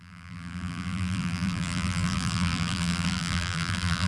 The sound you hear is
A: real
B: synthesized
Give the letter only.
B